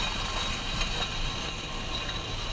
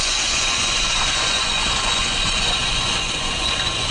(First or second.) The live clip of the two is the first